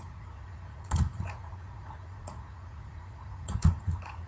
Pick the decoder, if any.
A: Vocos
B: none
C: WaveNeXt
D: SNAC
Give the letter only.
A